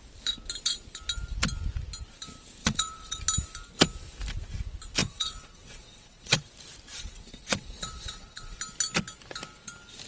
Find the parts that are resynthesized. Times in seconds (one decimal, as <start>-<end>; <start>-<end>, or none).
2.6-3.2; 5.0-6.5; 6.9-8.6